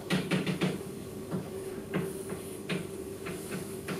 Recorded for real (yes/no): no